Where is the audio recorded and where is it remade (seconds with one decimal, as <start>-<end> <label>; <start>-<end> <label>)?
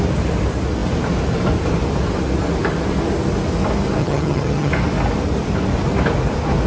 0.0-4.0 recorded; 4.0-4.7 remade; 4.7-6.7 recorded